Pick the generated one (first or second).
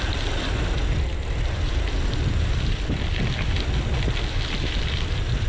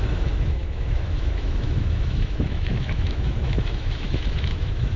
second